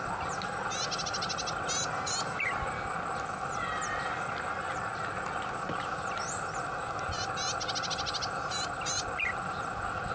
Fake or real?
real